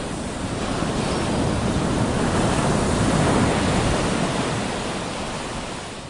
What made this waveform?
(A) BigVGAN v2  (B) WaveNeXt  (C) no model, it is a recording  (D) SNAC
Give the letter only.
C